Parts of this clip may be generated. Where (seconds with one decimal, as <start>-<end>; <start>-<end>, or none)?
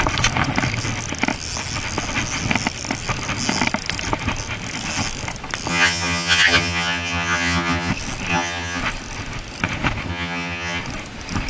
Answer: 5.7-7.9; 8.3-8.8; 10.1-10.8